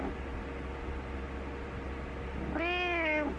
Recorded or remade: recorded